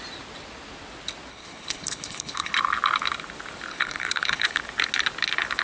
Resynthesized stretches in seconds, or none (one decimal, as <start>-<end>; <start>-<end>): 1.3-2.5; 3.7-4.6